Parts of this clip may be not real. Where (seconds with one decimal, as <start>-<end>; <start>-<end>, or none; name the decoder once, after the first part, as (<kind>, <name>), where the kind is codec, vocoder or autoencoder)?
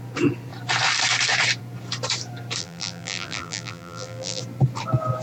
2.6-4.4 (vocoder, BigVGAN v2)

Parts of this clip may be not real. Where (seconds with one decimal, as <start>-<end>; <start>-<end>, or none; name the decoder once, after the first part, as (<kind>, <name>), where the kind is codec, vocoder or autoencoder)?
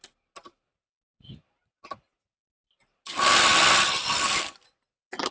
none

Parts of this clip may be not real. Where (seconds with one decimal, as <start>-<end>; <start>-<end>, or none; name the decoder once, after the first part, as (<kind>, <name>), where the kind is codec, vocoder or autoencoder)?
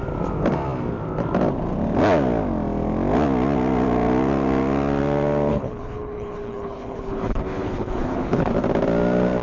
5.5-8.5 (codec, HILCodec)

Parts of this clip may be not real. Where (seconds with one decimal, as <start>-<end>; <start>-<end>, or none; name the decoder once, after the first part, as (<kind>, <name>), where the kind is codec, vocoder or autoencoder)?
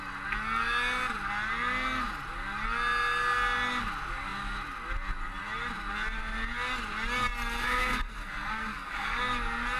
7.6-9.2 (codec, SNAC)